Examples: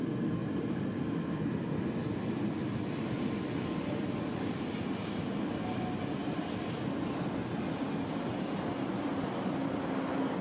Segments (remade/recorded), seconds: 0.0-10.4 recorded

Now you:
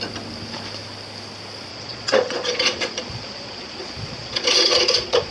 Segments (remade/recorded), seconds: 0.0-1.7 recorded; 1.7-5.3 remade

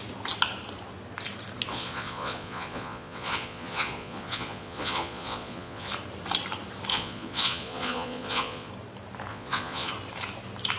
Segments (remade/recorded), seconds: 0.0-1.7 recorded; 1.7-5.9 remade; 5.9-6.9 recorded; 6.9-8.7 remade; 8.7-9.3 recorded; 9.3-9.9 remade; 9.9-10.8 recorded